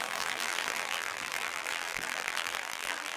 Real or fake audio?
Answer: fake